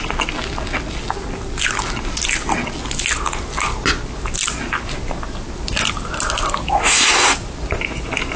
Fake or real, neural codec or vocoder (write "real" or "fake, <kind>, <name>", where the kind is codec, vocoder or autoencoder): real